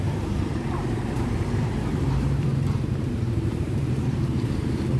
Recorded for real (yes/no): no